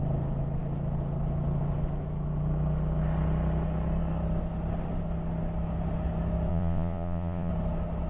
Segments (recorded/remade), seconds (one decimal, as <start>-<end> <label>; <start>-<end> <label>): 0.0-6.5 recorded; 6.5-7.5 remade; 7.5-8.1 recorded